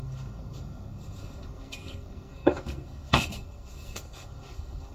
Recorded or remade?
remade